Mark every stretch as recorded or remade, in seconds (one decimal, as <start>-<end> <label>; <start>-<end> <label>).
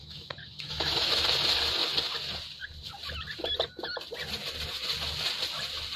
0.0-1.2 remade; 1.2-6.0 recorded